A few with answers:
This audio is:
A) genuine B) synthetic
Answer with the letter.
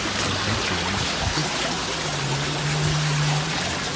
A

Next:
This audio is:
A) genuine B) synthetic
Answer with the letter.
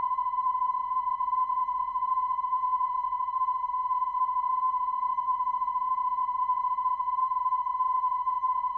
B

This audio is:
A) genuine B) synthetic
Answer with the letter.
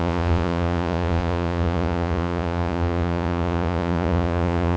B